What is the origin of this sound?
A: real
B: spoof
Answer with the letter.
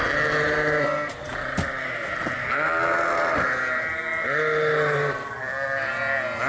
A